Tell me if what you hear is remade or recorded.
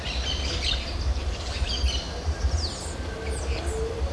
recorded